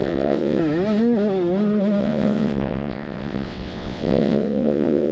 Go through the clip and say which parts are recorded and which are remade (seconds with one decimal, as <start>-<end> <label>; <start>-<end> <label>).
0.0-0.6 remade; 0.6-2.0 recorded; 2.0-5.1 remade